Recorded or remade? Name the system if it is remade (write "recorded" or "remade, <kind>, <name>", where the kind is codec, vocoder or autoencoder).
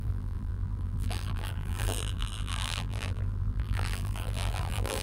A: remade, vocoder, BigVGAN v2